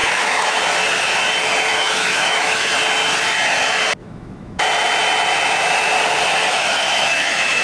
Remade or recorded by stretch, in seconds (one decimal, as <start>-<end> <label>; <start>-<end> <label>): 0.0-0.6 remade; 0.6-1.7 recorded; 1.7-2.7 remade; 2.7-4.0 recorded; 4.0-4.6 remade; 4.6-6.5 recorded; 6.5-7.6 remade